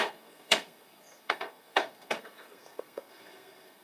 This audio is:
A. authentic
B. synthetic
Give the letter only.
B